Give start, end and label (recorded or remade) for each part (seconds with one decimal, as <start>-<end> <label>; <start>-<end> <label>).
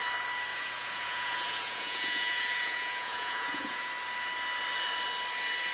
0.0-0.5 recorded; 0.5-3.9 remade; 3.9-5.7 recorded